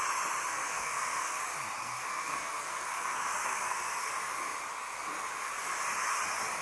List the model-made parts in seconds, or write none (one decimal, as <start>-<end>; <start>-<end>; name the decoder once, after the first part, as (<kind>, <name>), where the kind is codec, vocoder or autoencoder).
0.5-1.4 (codec, SNAC); 1.8-4.1